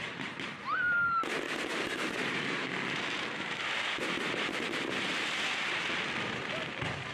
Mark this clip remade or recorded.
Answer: remade